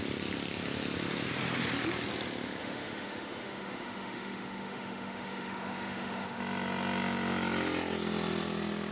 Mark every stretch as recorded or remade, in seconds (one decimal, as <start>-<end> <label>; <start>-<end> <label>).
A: 0.0-2.6 recorded; 2.6-6.4 remade; 6.4-8.9 recorded